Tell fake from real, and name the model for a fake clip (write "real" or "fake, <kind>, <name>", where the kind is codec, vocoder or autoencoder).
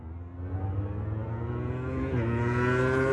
real